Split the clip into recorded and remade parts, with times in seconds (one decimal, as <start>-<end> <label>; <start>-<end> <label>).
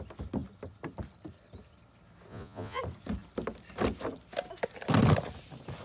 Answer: 0.0-2.3 recorded; 2.3-2.8 remade; 2.8-5.8 recorded